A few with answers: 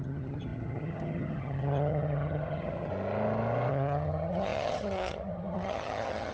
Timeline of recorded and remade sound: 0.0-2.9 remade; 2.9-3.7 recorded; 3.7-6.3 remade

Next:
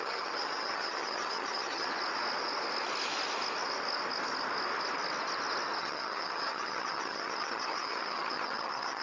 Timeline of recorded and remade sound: 0.0-1.9 remade; 1.9-5.8 recorded; 5.8-9.0 remade

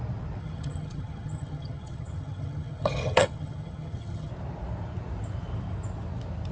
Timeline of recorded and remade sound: 0.0-0.4 recorded; 0.4-4.3 remade; 4.3-6.5 recorded

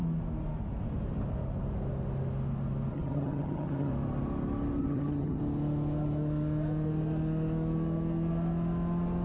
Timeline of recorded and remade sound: 0.0-2.9 recorded; 2.9-3.9 remade; 3.9-4.8 recorded; 4.8-5.4 remade; 5.4-9.2 recorded

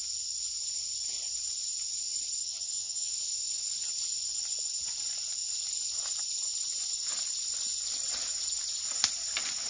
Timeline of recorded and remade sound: 0.0-2.4 recorded; 2.4-3.1 remade; 3.1-9.7 recorded

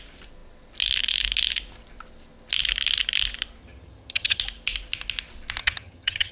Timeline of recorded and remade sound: 0.0-3.6 recorded; 3.6-4.4 remade; 4.4-5.6 recorded; 5.6-6.3 remade